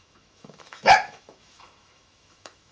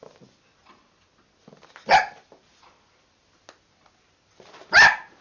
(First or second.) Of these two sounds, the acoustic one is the second